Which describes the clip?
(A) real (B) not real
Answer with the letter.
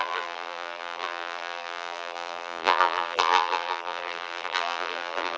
B